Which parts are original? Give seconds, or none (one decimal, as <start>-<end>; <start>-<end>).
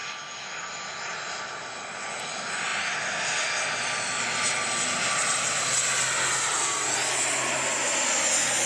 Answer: 0.0-8.7